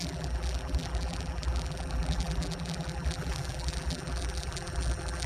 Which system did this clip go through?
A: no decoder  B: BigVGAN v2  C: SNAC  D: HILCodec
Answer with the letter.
B